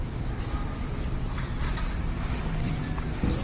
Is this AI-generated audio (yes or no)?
yes